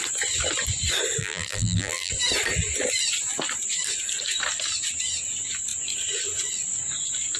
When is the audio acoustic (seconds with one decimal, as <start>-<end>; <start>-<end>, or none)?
0.0-1.2; 2.1-7.4